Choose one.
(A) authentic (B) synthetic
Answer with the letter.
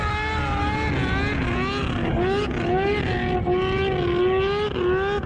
A